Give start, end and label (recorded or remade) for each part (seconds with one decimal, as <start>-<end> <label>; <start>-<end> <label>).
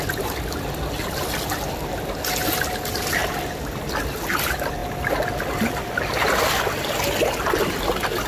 0.0-8.3 recorded